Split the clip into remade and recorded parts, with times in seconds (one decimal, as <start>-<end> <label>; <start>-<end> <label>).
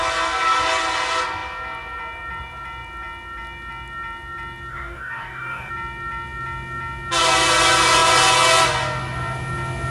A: 0.0-4.7 recorded; 4.7-5.7 remade; 5.7-9.9 recorded